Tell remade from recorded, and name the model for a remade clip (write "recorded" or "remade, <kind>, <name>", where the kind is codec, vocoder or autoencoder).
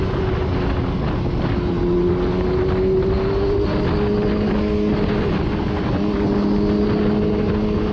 recorded